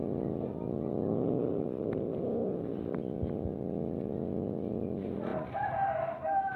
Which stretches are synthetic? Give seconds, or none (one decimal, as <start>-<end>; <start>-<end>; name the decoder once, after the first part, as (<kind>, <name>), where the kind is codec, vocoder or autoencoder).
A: 5.3-6.6 (vocoder, BigVGAN v2)